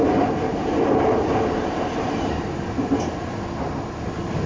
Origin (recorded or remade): recorded